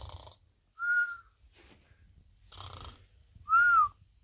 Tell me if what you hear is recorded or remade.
recorded